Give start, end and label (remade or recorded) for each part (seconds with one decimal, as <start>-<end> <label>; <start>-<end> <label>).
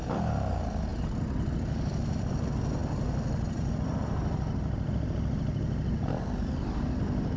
0.0-7.4 recorded